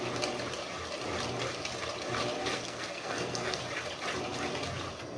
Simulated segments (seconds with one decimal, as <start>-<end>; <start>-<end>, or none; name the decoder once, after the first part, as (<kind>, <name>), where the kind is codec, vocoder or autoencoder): 2.4-3.6 (codec, SNAC)

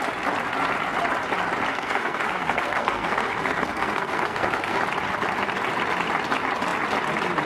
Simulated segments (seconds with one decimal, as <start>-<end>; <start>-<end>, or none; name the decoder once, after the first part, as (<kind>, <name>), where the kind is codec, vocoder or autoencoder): 1.7-4.8 (codec, SNAC)

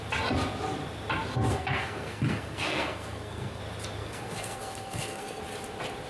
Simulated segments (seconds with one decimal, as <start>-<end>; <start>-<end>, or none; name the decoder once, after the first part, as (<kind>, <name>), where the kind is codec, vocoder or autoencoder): 1.5-3.6 (codec, SNAC); 4.0-5.4

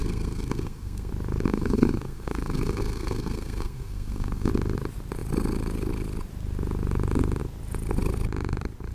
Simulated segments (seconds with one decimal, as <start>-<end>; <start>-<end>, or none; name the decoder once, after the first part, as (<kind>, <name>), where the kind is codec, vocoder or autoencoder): 0.0-1.1 (codec, SNAC); 1.5-4.5